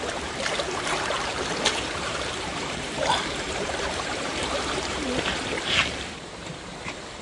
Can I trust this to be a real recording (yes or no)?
no